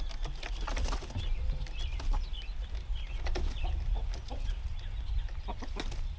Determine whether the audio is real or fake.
real